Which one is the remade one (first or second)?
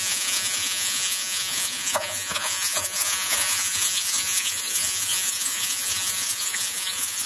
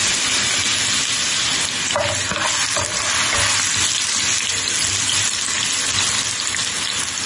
first